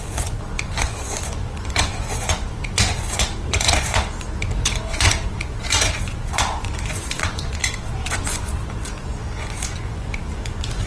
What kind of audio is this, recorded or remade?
remade